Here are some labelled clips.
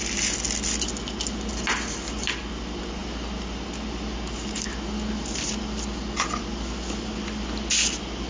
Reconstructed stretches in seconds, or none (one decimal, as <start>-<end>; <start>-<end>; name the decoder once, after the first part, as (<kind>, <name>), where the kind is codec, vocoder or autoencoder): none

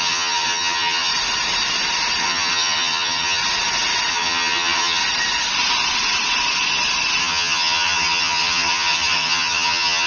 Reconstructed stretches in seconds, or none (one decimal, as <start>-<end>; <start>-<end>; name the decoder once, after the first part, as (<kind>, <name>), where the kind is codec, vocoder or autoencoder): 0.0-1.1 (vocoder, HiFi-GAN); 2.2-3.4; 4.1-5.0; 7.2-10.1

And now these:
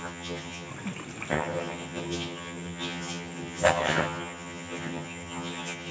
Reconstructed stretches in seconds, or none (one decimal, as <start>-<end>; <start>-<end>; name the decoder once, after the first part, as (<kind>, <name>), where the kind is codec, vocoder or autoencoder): 0.0-0.7 (vocoder, HiFi-GAN); 1.3-5.9

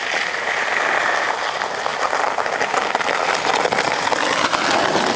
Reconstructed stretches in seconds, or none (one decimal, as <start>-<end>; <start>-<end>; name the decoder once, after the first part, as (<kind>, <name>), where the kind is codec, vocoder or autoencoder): none

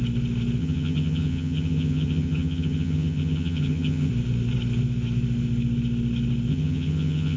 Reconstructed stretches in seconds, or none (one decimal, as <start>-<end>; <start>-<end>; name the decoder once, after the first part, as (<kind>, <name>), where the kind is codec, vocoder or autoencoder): 0.6-4.1 (vocoder, HiFi-GAN); 6.5-7.4

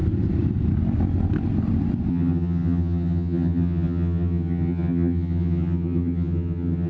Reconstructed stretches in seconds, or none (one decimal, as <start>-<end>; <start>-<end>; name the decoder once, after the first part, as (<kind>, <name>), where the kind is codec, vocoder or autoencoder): 2.1-6.9 (vocoder, HiFi-GAN)

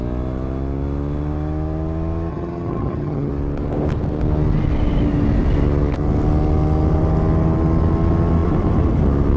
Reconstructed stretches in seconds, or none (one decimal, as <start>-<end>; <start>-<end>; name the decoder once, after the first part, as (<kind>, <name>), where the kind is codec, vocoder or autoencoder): 2.3-3.3 (vocoder, HiFi-GAN)